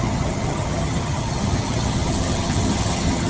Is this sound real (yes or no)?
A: no